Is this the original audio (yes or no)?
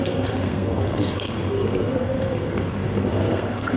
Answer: no